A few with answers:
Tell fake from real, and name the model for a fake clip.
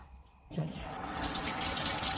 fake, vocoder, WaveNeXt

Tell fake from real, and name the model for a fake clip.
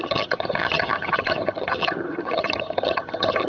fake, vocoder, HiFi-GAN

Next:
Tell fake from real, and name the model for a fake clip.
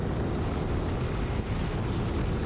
real